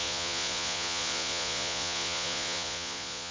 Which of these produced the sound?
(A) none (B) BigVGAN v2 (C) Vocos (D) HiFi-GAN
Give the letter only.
C